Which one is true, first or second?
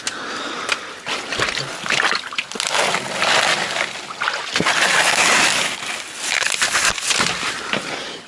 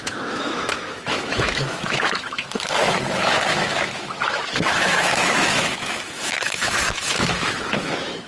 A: first